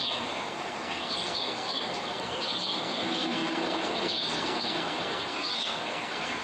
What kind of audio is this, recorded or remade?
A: remade